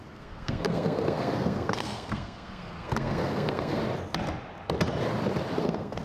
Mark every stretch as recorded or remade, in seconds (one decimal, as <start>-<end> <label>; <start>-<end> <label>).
0.0-3.8 remade; 3.8-5.6 recorded; 5.6-6.0 remade